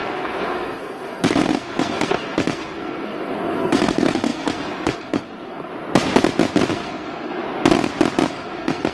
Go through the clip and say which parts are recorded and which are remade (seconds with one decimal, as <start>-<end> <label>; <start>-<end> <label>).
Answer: 0.0-5.7 remade; 5.7-6.7 recorded; 6.7-7.4 remade; 7.4-8.3 recorded; 8.3-8.9 remade